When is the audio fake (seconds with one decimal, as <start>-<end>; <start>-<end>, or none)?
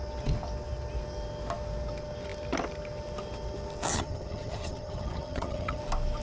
3.9-5.8